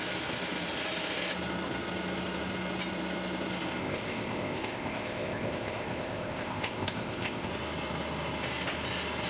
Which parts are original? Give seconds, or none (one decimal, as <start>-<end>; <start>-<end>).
0.0-3.8; 7.5-9.3